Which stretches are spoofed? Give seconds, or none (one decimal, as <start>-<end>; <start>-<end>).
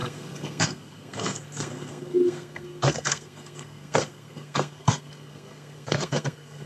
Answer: 0.0-6.7